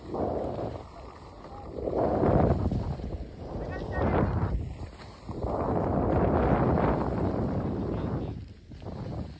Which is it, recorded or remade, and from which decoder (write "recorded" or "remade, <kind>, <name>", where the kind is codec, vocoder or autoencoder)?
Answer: recorded